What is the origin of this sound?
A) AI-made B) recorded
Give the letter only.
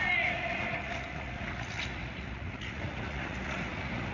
A